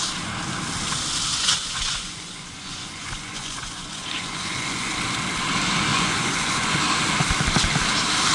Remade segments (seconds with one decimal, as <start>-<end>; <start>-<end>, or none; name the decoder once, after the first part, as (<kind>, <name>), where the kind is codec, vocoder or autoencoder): 1.3-4.9 (vocoder, Vocos); 5.9-6.8